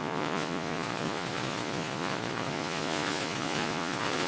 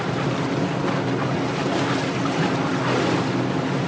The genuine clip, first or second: second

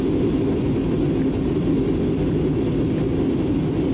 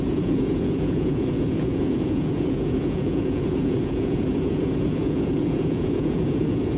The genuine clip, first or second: first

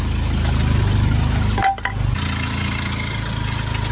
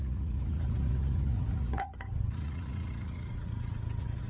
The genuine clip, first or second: first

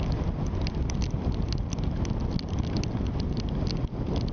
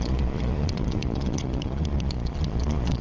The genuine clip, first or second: first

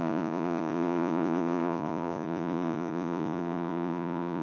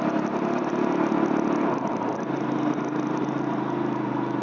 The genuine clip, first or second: second